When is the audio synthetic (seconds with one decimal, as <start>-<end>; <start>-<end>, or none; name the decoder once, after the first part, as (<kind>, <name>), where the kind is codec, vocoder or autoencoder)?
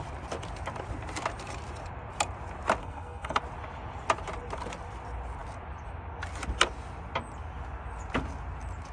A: 2.8-3.4 (codec, SNAC)